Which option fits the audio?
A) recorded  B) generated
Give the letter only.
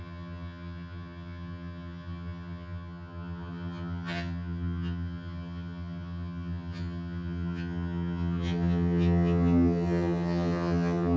B